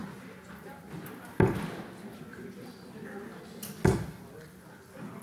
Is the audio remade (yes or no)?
no